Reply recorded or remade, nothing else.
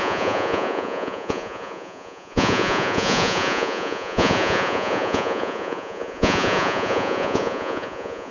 remade